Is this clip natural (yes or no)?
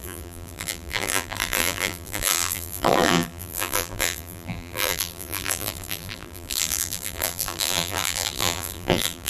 no